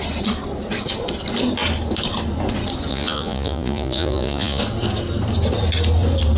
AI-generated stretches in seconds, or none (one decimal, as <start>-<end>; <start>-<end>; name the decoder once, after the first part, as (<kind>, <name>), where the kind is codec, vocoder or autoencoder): 2.9-4.6 (vocoder, Vocos)